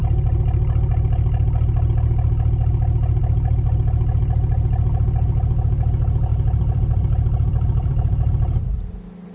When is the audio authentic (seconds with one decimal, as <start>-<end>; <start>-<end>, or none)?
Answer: 0.0-6.3; 8.9-9.3